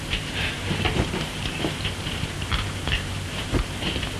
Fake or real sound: fake